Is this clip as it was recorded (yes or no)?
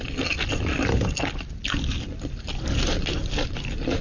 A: yes